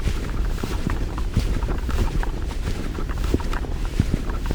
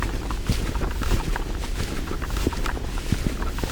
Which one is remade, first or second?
first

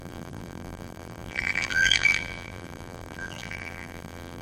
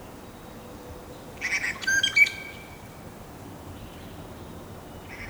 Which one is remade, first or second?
first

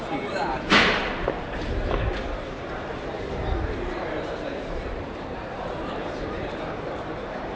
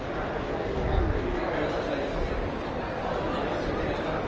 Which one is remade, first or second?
first